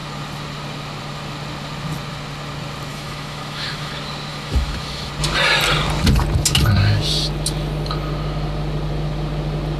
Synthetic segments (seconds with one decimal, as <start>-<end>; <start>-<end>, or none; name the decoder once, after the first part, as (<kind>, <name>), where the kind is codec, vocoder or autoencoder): 2.9-3.9 (autoencoder, DAC-VAE); 4.3-5.1